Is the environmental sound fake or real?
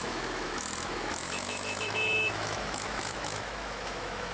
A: fake